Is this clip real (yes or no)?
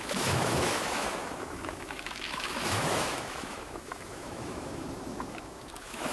no